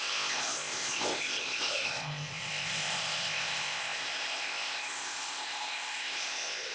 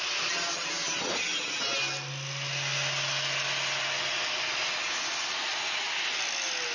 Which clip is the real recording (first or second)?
second